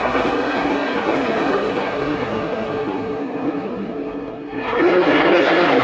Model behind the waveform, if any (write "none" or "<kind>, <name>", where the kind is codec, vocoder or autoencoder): codec, SNAC